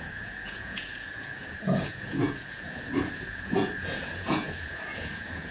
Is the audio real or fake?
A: fake